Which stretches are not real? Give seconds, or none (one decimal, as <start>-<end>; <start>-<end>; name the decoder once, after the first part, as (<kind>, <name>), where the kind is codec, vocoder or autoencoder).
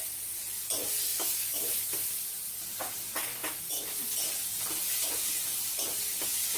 1.1-1.8 (autoencoder, DAC-VAE); 3.4-4.0